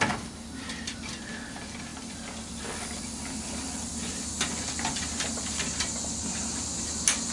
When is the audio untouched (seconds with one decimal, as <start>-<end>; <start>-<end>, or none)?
0.0-7.3